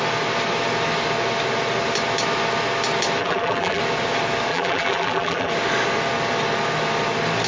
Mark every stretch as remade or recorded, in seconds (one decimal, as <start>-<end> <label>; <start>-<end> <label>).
0.0-3.2 recorded; 3.2-3.8 remade; 3.8-4.5 recorded; 4.5-5.5 remade; 5.5-7.5 recorded